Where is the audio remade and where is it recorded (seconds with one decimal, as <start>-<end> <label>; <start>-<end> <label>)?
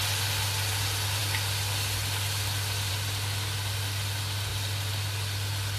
0.0-5.8 recorded